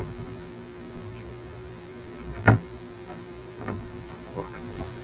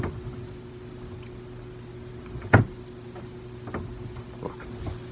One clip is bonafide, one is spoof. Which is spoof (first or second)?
first